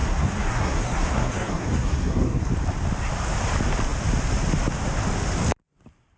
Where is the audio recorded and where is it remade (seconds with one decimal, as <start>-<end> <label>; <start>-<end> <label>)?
0.0-2.5 remade; 2.5-6.2 recorded